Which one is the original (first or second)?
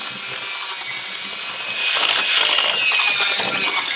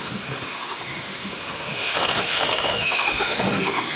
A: first